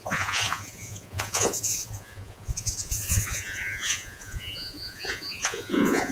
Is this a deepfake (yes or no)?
yes